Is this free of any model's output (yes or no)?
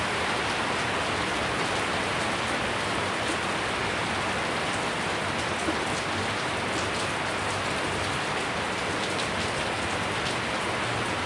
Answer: yes